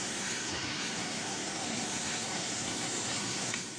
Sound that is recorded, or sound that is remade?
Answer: remade